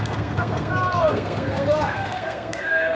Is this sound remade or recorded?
remade